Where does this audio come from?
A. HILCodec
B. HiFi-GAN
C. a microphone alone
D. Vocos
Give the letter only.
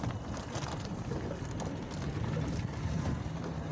C